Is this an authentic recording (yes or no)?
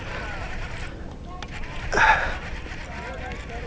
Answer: yes